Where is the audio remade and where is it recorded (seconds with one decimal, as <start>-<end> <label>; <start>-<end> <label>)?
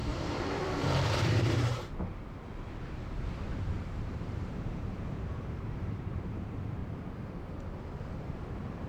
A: 0.0-6.8 remade; 6.8-8.2 recorded; 8.2-8.9 remade